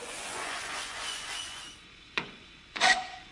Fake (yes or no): yes